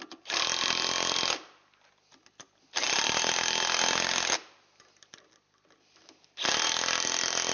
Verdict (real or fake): real